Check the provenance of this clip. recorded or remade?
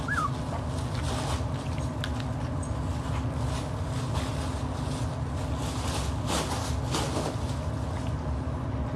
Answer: recorded